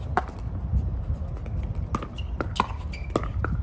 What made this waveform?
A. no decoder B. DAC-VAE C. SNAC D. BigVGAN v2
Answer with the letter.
A